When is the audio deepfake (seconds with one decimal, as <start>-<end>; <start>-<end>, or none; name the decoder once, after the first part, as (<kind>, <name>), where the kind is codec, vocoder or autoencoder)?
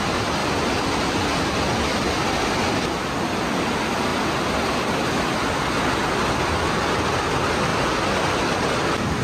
none